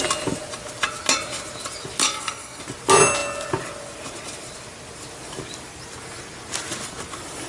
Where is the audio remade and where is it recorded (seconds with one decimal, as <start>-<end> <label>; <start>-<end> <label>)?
0.0-2.0 recorded; 2.0-2.6 remade; 2.6-7.5 recorded